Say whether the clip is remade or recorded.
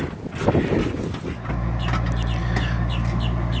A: recorded